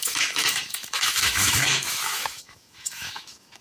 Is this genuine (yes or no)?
no